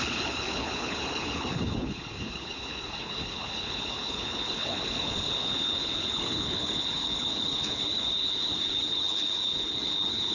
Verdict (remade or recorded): remade